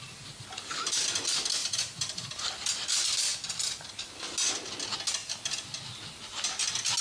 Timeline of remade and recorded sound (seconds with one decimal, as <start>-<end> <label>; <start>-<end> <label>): 0.0-1.6 recorded; 1.6-2.5 remade; 2.5-3.3 recorded; 3.3-4.1 remade; 4.1-5.2 recorded; 5.2-5.7 remade; 5.7-7.0 recorded